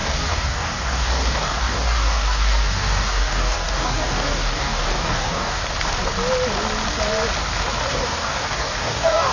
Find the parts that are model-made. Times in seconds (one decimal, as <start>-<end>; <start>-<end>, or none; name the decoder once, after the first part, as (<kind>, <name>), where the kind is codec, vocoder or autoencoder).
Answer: 0.0-5.6 (codec, DAC); 7.9-9.3